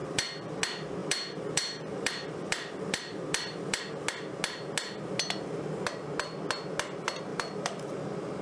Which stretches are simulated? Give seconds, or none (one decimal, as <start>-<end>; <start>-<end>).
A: 0.0-0.6; 1.0-3.8; 7.3-8.4